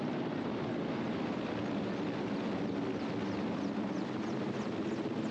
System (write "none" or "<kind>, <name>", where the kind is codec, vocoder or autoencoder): none